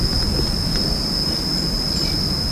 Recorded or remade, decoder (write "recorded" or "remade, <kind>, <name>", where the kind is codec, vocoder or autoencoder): recorded